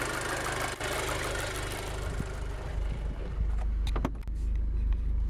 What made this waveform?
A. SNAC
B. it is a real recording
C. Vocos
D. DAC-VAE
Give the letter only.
B